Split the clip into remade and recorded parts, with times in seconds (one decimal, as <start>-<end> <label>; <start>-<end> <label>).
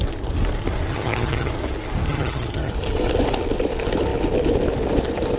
0.0-0.9 recorded; 0.9-1.5 remade; 1.5-2.1 recorded; 2.1-2.7 remade; 2.7-5.4 recorded